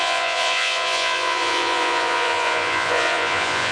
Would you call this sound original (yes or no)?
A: no